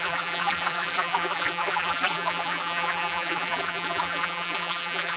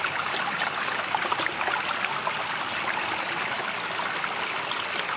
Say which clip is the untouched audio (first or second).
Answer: second